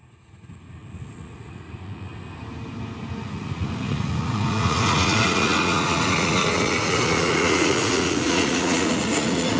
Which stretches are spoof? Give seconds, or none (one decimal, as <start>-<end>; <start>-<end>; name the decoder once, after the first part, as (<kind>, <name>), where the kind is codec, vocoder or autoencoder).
0.0-2.1 (vocoder, Vocos); 3.2-9.6